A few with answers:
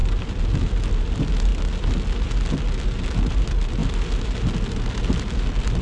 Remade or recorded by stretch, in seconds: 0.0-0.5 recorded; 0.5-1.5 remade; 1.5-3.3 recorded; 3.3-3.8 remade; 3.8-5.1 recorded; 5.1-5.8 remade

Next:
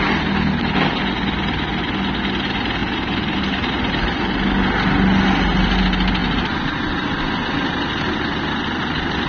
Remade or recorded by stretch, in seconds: 0.0-2.8 recorded; 2.8-4.3 remade; 4.3-9.3 recorded

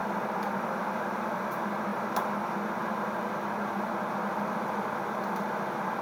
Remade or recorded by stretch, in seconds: 0.0-6.0 recorded

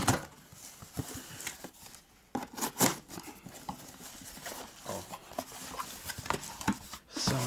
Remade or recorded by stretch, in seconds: 0.0-7.5 recorded

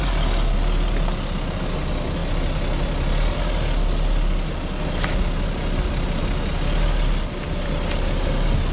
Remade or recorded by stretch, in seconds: 0.0-8.7 recorded

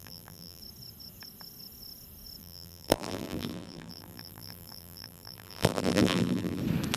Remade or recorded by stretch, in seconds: 0.0-0.6 remade; 0.6-2.4 recorded; 2.4-6.6 remade; 6.6-7.0 recorded